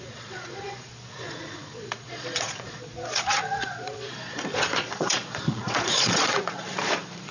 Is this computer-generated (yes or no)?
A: yes